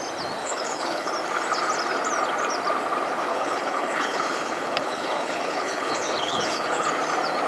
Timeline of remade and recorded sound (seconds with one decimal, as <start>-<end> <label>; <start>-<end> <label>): 0.0-0.4 recorded; 0.4-1.1 remade; 1.1-3.3 recorded; 3.3-6.9 remade; 6.9-7.5 recorded